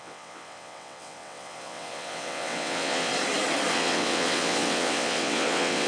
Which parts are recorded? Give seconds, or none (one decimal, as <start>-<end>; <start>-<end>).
3.1-3.7